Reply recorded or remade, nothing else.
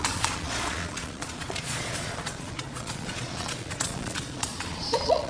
remade